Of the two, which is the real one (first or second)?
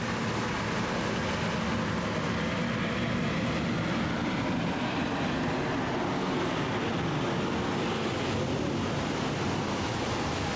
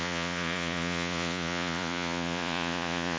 first